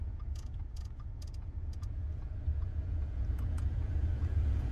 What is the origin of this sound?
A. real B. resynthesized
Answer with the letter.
B